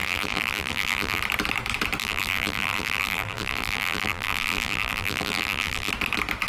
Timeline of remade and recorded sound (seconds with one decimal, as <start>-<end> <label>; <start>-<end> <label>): 0.0-1.2 remade; 1.2-2.0 recorded; 2.0-5.9 remade; 5.9-6.5 recorded